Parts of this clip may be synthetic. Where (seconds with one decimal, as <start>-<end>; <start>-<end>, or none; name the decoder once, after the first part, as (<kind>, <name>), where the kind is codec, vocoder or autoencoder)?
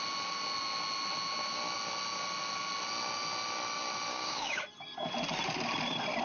4.1-4.6 (codec, DAC)